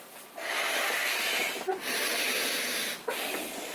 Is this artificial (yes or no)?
no